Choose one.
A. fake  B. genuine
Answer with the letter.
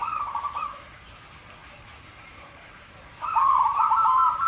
B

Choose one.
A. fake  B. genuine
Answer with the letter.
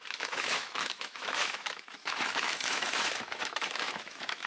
A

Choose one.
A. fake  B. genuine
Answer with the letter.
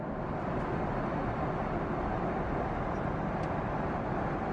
B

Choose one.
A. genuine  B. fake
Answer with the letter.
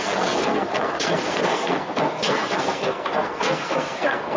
B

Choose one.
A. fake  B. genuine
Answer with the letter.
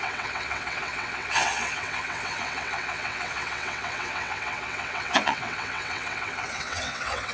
A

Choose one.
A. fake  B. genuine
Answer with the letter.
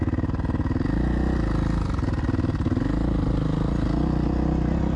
B